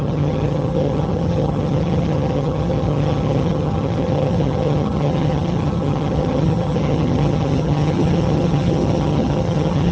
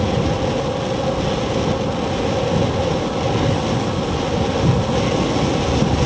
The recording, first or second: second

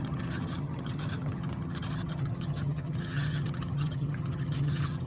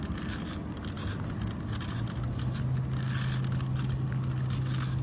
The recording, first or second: second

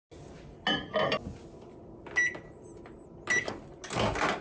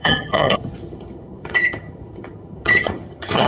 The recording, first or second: first